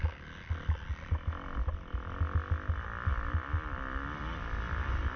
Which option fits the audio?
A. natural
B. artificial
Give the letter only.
A